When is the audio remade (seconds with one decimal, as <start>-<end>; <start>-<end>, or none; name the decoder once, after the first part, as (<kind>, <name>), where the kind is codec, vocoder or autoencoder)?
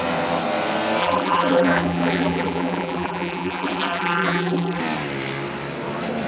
1.0-4.8 (vocoder, BigVGAN v2)